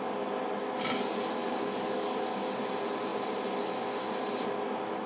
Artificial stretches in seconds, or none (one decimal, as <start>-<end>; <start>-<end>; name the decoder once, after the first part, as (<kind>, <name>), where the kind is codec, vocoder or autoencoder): 1.4-2.2 (codec, DAC)